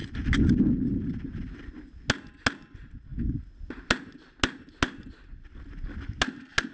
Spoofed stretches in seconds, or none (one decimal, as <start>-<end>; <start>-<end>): none